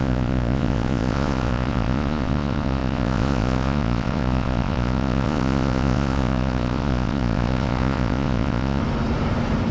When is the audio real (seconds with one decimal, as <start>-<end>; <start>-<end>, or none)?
8.8-9.7